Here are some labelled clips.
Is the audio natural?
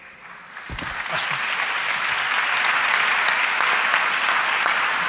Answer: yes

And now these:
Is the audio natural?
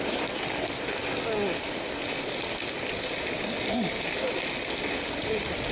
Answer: yes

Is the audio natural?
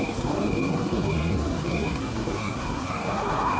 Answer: no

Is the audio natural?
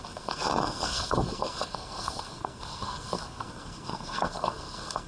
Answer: no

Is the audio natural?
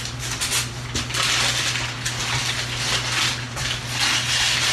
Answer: yes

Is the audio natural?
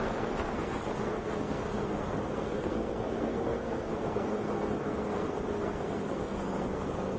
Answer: no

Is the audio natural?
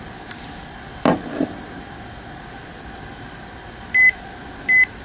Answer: yes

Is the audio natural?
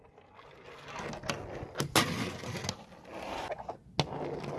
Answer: yes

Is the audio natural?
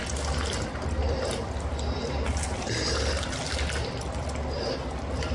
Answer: yes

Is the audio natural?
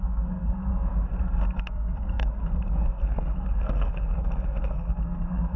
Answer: no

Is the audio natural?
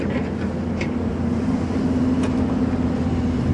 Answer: yes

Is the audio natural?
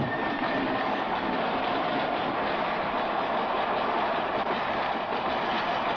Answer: yes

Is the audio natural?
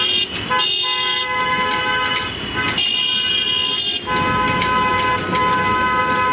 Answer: yes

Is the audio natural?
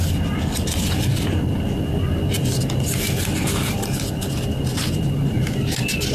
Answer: yes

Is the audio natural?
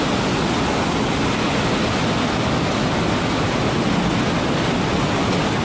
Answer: yes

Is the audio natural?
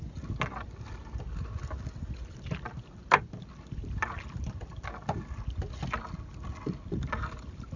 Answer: yes